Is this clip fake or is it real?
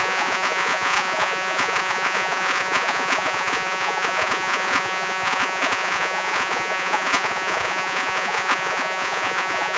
fake